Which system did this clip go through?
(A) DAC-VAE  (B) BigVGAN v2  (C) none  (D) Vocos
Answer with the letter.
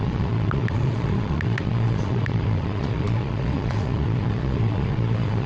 D